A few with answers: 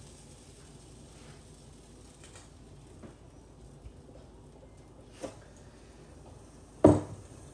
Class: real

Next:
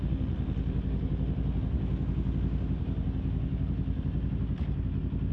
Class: real